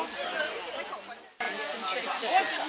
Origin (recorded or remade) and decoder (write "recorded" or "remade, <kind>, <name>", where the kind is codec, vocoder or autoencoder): recorded